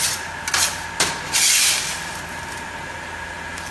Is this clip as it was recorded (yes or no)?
yes